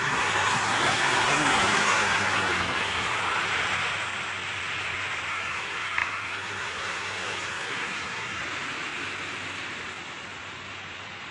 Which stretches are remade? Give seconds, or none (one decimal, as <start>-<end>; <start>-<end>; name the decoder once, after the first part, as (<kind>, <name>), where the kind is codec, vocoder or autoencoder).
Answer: 0.0-3.2 (codec, SNAC); 5.3-8.4